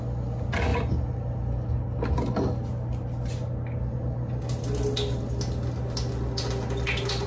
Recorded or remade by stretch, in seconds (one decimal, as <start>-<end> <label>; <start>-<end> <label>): 0.0-7.3 recorded